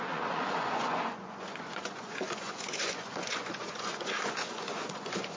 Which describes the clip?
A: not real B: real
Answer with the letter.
A